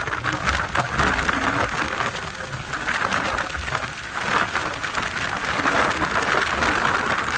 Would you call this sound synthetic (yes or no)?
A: no